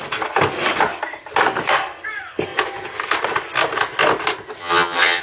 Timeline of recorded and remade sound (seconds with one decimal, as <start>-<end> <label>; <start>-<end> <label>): 0.0-4.6 recorded; 4.6-5.2 remade